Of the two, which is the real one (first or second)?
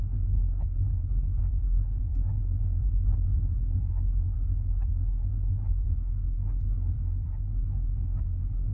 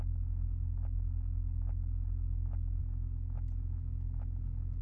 second